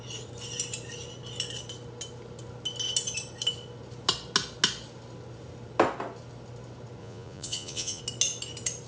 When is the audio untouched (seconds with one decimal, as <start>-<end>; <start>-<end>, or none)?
0.0-7.0; 8.0-8.9